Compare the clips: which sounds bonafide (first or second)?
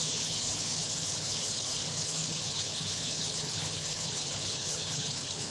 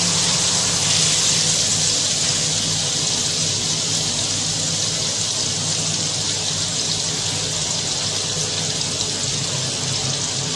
second